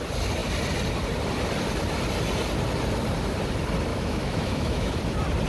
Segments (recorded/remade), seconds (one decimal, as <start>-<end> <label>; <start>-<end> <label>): 0.0-3.9 recorded; 3.9-5.0 remade; 5.0-5.5 recorded